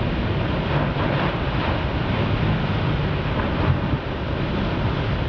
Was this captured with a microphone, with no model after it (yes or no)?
yes